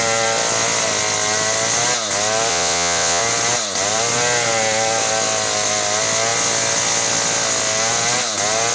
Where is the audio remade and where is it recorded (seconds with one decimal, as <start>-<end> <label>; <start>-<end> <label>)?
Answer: 0.0-2.5 recorded; 2.5-3.2 remade; 3.2-8.7 recorded